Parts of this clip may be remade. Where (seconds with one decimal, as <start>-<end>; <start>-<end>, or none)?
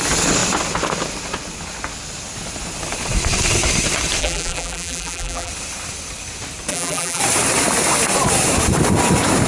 4.2-5.5; 6.7-7.2